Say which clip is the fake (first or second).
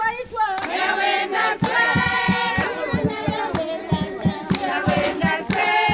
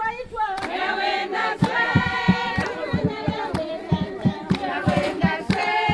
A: second